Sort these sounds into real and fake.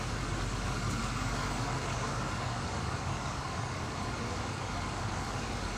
fake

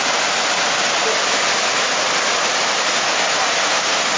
real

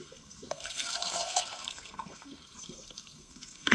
fake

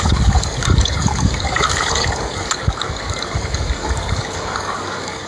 fake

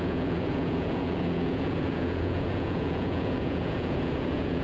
fake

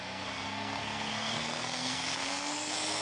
fake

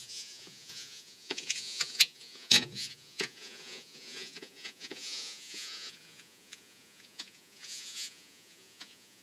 fake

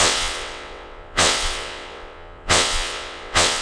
fake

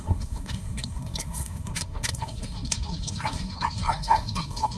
fake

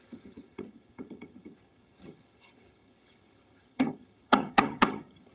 fake